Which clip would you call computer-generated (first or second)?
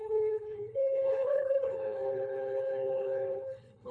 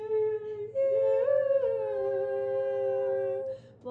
first